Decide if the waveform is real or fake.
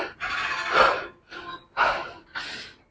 real